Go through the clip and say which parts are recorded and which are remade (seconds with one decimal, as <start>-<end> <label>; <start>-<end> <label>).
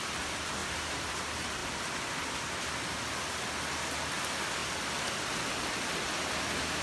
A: 0.0-0.6 recorded; 0.6-1.1 remade; 1.1-6.8 recorded